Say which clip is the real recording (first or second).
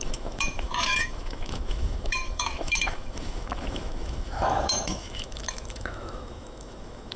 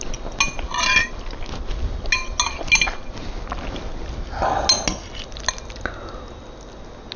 second